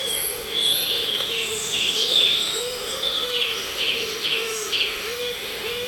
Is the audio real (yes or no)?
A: no